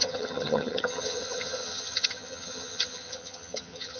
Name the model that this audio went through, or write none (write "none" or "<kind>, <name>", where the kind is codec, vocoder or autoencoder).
vocoder, HiFi-GAN